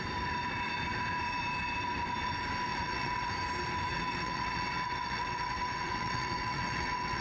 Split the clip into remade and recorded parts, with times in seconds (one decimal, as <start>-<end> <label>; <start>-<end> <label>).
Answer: 0.0-2.7 recorded; 2.7-3.3 remade; 3.3-3.9 recorded; 3.9-7.2 remade